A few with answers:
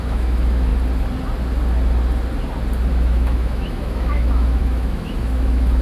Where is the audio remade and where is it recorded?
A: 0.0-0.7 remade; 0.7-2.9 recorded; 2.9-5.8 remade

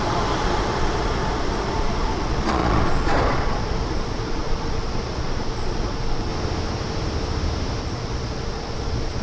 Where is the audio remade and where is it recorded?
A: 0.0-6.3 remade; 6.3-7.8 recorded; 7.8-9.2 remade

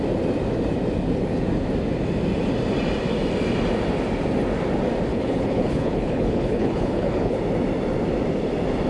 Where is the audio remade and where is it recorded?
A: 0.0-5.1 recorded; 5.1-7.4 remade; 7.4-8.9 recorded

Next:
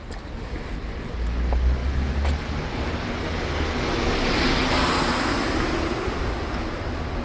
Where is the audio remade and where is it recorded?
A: 0.0-7.2 recorded

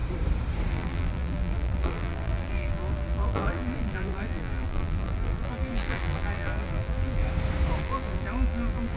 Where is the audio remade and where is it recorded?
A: 0.0-0.7 recorded; 0.7-7.2 remade; 7.2-7.8 recorded; 7.8-9.0 remade